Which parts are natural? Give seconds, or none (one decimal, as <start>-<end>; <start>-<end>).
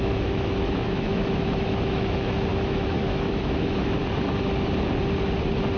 4.0-5.8